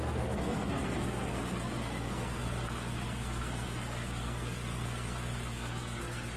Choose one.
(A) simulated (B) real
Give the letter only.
A